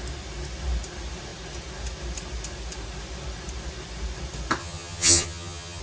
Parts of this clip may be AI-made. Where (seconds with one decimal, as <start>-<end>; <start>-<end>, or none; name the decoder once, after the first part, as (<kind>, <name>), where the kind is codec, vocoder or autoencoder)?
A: 4.6-5.8 (vocoder, HiFi-GAN)